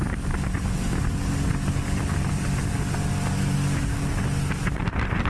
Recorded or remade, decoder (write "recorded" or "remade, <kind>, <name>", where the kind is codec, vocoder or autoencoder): recorded